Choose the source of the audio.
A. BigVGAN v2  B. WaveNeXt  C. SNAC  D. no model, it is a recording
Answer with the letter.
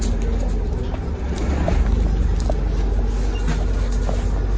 D